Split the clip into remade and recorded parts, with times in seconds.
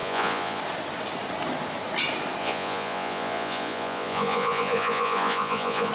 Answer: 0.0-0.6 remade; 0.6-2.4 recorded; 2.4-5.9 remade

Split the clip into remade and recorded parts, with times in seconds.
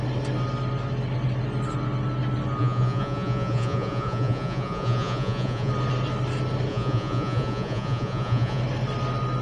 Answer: 0.0-2.6 recorded; 2.6-5.7 remade; 5.7-6.7 recorded; 6.7-8.6 remade; 8.6-9.4 recorded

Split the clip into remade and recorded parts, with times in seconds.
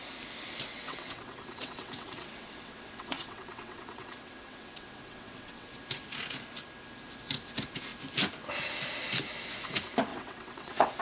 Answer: 0.0-0.7 recorded; 0.7-5.7 remade; 5.7-10.1 recorded; 10.1-11.0 remade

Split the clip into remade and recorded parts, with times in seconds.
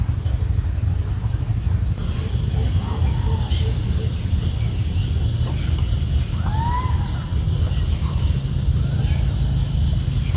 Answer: 0.0-10.4 recorded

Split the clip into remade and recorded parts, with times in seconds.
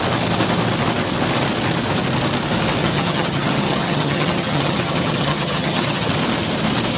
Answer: 0.0-2.8 recorded; 2.8-6.1 remade; 6.1-7.0 recorded